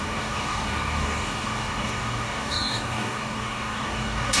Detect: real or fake fake